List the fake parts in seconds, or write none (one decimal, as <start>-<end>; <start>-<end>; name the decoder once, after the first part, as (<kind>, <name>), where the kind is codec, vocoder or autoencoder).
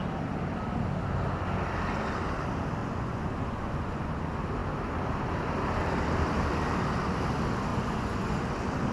2.8-4.1 (vocoder, Vocos); 7.7-8.4